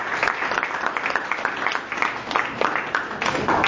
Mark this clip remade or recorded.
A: recorded